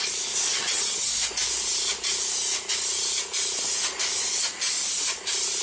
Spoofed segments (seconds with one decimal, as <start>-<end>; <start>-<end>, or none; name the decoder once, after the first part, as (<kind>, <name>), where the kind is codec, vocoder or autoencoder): 0.5-1.1 (vocoder, HiFi-GAN)